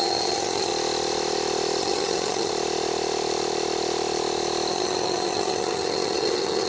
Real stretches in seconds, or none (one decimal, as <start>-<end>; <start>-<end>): 0.7-1.8; 2.5-4.7